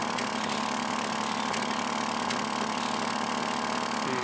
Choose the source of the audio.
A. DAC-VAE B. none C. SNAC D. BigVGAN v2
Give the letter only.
B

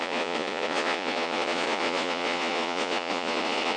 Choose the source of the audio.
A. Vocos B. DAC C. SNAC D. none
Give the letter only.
A